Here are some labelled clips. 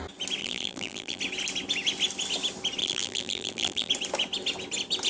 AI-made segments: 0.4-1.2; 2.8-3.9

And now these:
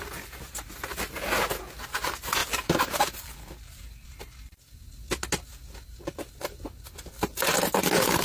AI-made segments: 2.4-4.1

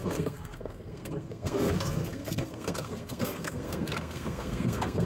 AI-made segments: 0.0-5.1

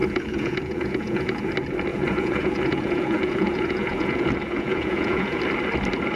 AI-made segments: 0.0-1.5; 1.9-5.4

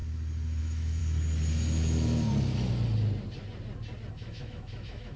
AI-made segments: 0.6-1.0; 4.1-5.2

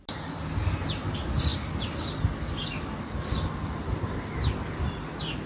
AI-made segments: none